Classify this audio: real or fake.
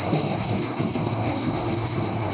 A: fake